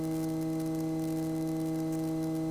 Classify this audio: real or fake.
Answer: real